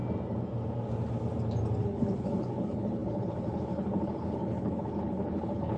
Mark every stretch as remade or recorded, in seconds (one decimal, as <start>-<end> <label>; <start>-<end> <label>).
0.0-1.8 recorded; 1.8-5.8 remade